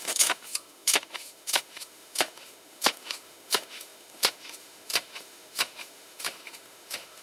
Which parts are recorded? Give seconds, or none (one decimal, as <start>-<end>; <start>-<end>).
none